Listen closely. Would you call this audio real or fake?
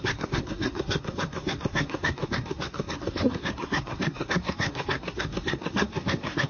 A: fake